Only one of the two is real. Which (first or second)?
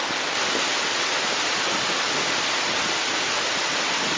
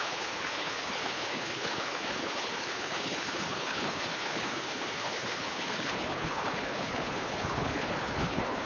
first